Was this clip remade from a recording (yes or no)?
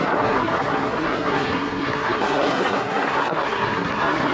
yes